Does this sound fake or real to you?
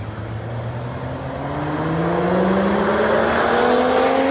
real